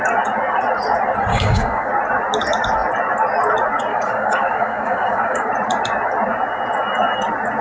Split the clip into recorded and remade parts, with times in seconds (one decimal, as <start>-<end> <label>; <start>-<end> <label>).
0.0-1.3 recorded; 1.3-1.9 remade; 1.9-3.9 recorded; 3.9-5.5 remade; 5.5-7.6 recorded